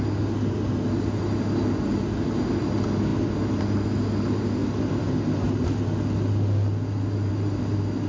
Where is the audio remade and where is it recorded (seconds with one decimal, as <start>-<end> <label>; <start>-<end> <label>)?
0.0-8.1 recorded